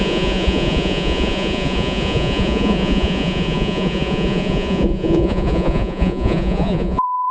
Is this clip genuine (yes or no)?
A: no